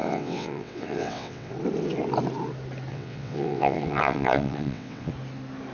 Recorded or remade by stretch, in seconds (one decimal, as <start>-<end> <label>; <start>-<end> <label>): 0.0-1.5 remade; 1.5-2.9 recorded; 2.9-5.1 remade; 5.1-5.7 recorded